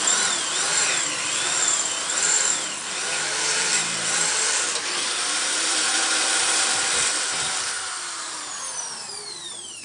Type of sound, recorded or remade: remade